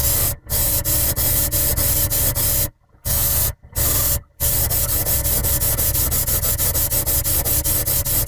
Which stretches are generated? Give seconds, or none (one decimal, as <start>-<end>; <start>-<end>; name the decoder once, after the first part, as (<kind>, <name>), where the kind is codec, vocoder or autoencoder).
0.6-5.4 (vocoder, BigVGAN v2)